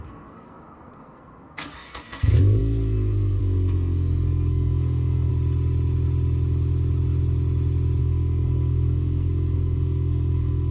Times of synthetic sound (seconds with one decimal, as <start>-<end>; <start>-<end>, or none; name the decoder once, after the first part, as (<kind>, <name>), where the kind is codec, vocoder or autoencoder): 0.0-5.3 (codec, SNAC); 8.0-10.7